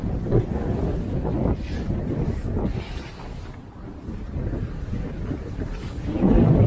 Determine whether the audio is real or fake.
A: real